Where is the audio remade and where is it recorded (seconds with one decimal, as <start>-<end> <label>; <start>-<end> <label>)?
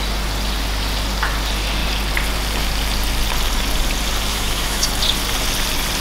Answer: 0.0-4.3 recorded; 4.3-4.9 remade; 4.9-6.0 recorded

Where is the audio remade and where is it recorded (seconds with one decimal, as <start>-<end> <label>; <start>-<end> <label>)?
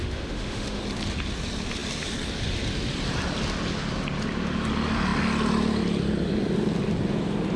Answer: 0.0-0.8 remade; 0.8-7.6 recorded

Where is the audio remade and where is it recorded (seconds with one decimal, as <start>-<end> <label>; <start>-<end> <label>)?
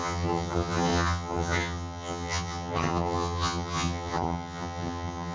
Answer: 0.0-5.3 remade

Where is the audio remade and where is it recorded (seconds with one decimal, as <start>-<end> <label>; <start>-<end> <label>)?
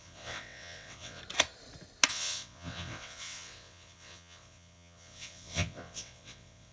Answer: 0.0-1.2 remade; 1.2-2.1 recorded; 2.1-6.7 remade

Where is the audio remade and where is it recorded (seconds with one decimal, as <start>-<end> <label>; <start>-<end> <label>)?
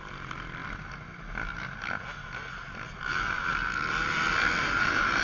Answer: 0.0-0.6 remade; 0.6-3.0 recorded; 3.0-3.5 remade; 3.5-4.6 recorded; 4.6-5.2 remade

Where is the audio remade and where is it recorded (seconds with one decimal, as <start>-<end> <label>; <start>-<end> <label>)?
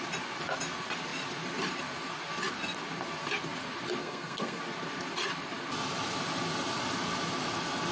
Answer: 0.0-4.0 recorded; 4.0-4.6 remade; 4.6-7.9 recorded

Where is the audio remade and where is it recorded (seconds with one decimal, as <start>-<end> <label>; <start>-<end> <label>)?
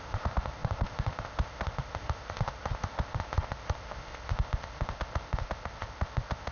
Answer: 0.0-6.5 remade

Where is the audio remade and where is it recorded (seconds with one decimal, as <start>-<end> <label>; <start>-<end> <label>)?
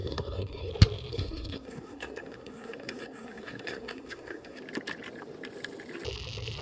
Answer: 0.0-0.7 remade; 0.7-1.1 recorded; 1.1-4.6 remade; 4.6-6.6 recorded